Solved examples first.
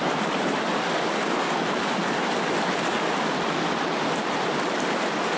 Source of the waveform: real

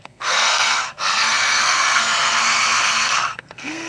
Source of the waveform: fake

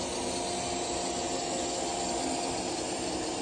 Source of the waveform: real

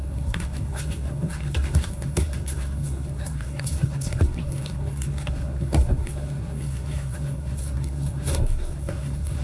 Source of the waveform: fake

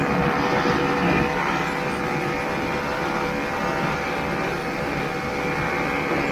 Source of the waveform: real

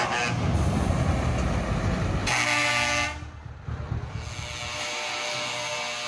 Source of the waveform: real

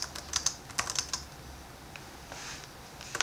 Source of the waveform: real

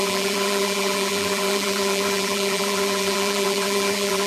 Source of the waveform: fake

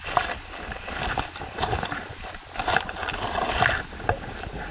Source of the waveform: real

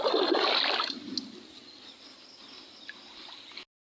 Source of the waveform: real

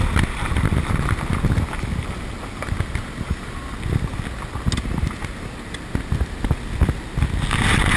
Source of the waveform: real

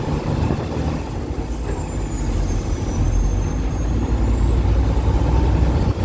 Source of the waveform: real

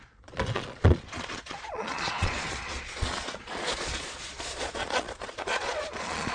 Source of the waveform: fake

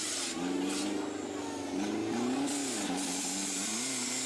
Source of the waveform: real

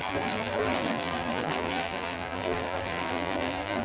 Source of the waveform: fake